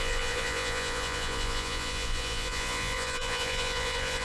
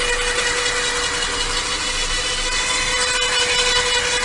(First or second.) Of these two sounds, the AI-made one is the first